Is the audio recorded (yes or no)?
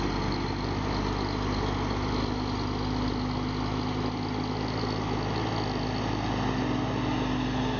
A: yes